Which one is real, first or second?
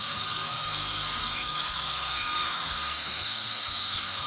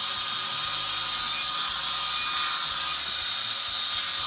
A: second